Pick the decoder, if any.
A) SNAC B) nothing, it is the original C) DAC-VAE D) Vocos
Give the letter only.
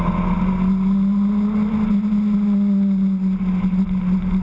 B